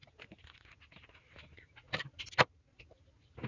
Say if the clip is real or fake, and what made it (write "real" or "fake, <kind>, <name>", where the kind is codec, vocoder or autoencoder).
real